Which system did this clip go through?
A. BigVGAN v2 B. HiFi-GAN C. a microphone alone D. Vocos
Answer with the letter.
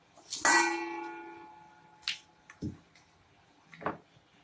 C